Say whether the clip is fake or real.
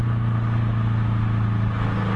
real